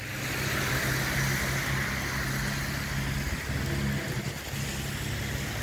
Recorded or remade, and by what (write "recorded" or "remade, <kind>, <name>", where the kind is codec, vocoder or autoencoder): recorded